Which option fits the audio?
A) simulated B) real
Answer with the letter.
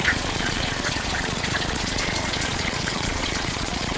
A